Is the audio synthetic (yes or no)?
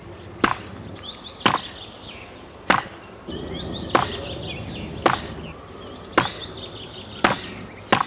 no